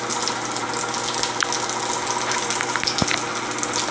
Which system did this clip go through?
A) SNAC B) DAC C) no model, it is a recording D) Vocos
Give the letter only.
C